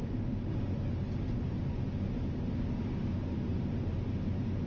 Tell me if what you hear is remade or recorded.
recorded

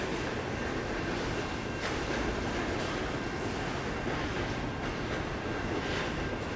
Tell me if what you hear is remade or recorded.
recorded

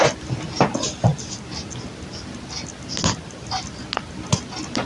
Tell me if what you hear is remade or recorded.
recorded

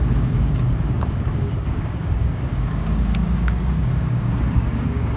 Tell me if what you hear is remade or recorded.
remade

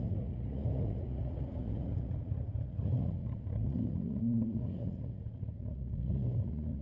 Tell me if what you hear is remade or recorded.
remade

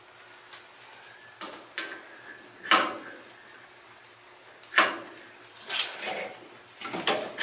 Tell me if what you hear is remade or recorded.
recorded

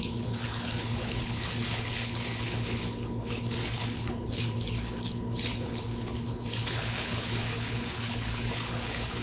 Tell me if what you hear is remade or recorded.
remade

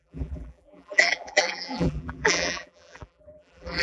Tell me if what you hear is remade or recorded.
remade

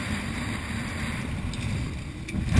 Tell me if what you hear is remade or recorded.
recorded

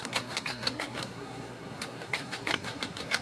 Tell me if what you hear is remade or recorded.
remade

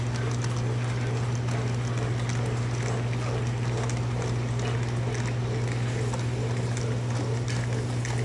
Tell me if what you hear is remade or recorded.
recorded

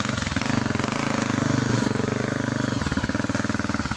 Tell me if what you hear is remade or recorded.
recorded